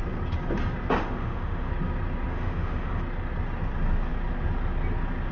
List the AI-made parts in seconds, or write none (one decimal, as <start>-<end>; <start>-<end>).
1.0-1.7; 2.3-3.0